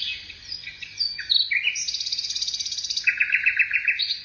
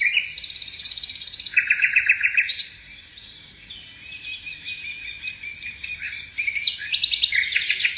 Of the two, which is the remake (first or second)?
second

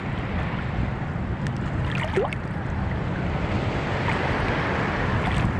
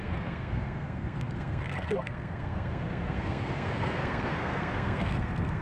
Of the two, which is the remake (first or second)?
second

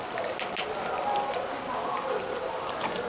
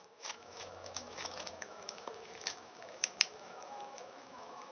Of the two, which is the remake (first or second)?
second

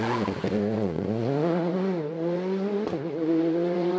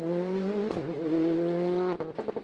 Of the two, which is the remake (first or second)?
first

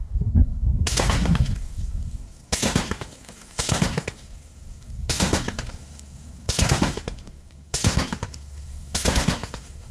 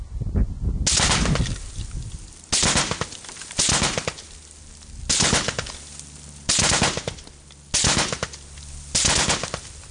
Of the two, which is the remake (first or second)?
first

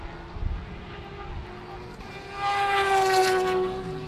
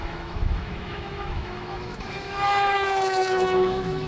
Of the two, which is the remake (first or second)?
second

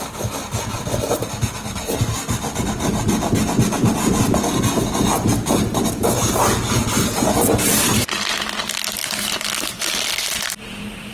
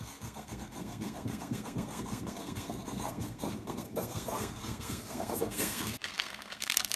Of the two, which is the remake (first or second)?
second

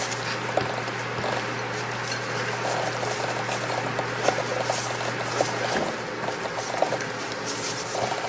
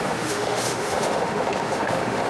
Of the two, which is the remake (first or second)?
second